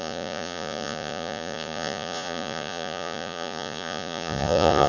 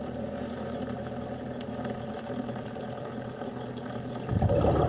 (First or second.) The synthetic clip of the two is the first